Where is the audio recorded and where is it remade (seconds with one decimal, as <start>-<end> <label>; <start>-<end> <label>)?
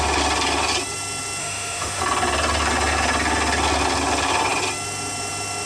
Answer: 0.0-1.4 recorded; 1.4-2.0 remade; 2.0-5.7 recorded